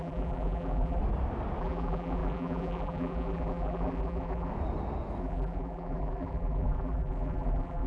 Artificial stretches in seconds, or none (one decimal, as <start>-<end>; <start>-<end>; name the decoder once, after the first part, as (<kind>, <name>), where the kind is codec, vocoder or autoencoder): 0.0-1.0 (vocoder, BigVGAN v2); 1.6-4.5; 5.2-7.9